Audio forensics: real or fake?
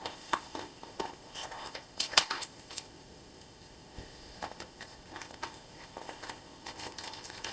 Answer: fake